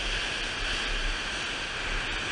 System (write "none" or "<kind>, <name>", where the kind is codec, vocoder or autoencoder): none